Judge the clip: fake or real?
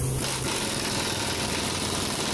real